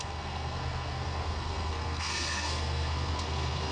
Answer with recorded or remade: remade